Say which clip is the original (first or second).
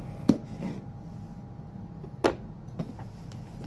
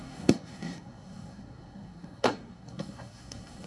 first